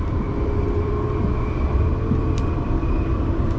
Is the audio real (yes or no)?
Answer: no